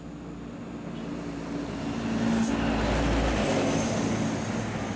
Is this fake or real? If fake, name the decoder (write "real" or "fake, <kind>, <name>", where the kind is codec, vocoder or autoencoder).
real